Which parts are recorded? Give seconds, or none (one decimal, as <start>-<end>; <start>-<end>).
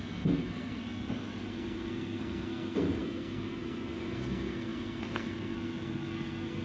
none